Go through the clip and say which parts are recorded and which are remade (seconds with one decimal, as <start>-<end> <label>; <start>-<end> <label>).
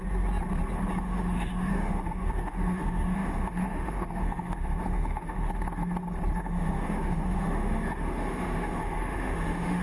0.0-1.0 recorded; 1.0-5.5 remade; 5.5-6.4 recorded; 6.4-9.8 remade